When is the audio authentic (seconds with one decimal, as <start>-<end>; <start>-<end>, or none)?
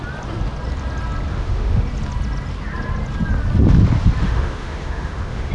0.0-1.3; 1.8-4.2